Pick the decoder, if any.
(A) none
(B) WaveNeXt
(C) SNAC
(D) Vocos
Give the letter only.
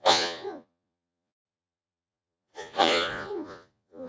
D